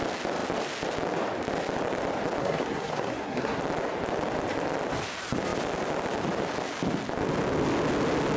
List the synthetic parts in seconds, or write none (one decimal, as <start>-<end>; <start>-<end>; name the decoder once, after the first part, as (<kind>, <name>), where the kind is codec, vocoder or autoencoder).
2.4-3.6 (codec, SNAC)